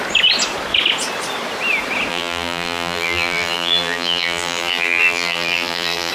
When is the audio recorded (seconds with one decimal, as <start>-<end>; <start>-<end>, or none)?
0.0-2.1